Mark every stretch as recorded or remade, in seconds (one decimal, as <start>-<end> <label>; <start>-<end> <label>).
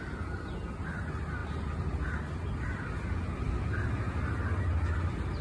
0.0-5.4 recorded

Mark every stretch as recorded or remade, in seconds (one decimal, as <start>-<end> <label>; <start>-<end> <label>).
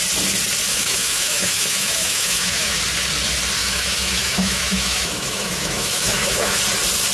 0.0-0.7 recorded; 0.7-2.8 remade; 2.8-3.6 recorded; 3.6-6.6 remade; 6.6-7.1 recorded